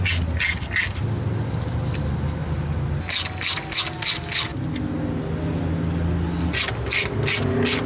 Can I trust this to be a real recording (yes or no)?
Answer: yes